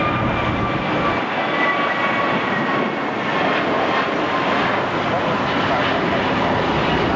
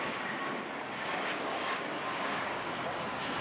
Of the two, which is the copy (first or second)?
second